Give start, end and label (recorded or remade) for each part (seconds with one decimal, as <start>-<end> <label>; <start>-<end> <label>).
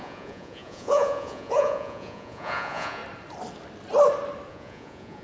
0.0-3.0 remade; 3.0-4.5 recorded; 4.5-5.2 remade